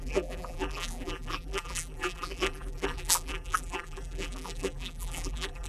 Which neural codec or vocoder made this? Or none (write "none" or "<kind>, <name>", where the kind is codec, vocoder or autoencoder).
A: vocoder, BigVGAN v2